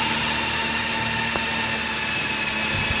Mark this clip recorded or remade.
recorded